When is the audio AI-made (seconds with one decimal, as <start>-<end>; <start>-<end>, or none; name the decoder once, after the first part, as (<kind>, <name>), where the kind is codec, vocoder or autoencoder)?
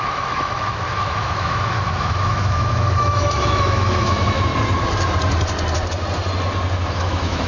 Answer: 0.0-4.5 (autoencoder, DAC-VAE); 6.9-7.5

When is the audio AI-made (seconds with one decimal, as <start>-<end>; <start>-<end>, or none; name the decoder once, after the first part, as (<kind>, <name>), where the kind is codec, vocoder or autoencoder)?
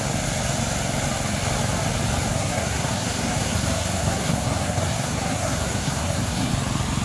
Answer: 2.3-6.5 (codec, SNAC)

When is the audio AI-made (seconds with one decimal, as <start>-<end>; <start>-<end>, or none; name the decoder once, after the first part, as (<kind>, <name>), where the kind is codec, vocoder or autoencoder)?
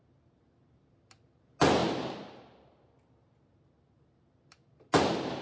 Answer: none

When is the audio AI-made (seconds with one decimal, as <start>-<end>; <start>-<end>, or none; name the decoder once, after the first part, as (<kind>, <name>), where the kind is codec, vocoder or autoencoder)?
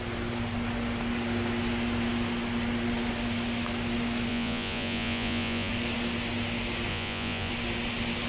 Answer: 4.3-5.7 (vocoder, Vocos); 6.9-7.5